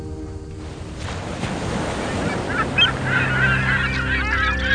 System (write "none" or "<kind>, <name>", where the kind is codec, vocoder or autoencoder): none